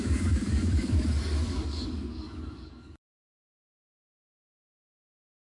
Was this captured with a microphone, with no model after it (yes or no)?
no